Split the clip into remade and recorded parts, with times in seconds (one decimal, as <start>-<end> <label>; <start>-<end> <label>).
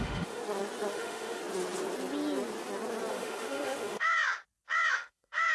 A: 0.0-0.4 remade; 0.4-0.9 recorded; 0.9-1.4 remade; 1.4-3.1 recorded; 3.1-4.1 remade; 4.1-4.9 recorded; 4.9-5.5 remade